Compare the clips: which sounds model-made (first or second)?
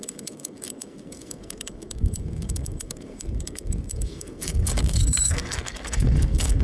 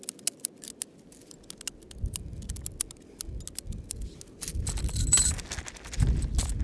first